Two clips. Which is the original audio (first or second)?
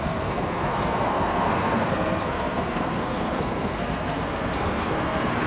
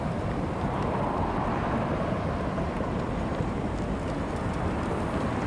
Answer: second